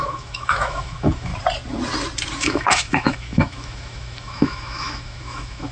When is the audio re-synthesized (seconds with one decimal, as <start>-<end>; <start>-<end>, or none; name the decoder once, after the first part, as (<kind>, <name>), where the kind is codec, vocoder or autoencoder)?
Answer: 0.0-1.3 (autoencoder, DAC-VAE); 2.4-5.7